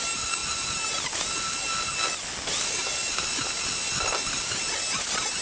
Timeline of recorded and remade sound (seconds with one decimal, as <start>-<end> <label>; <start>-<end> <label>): 0.0-5.4 recorded